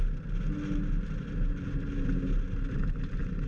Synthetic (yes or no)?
no